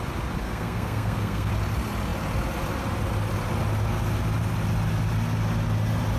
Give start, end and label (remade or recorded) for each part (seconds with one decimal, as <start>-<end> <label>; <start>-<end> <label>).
0.0-0.4 recorded; 0.4-1.5 remade; 1.5-6.2 recorded